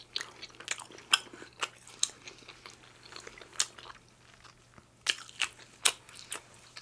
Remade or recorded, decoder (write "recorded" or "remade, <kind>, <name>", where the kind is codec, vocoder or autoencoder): recorded